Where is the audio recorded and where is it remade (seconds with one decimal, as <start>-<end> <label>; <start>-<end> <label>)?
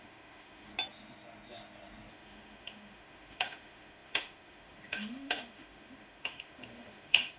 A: 0.0-0.7 remade; 0.7-2.1 recorded; 2.1-7.4 remade